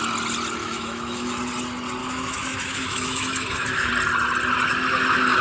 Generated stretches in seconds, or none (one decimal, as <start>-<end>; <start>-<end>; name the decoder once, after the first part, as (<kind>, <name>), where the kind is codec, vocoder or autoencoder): 0.6-1.4 (autoencoder, DAC-VAE); 2.0-3.9